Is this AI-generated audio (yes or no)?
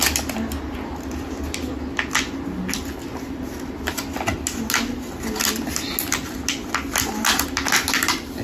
no